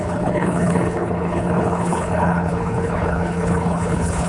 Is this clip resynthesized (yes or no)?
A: yes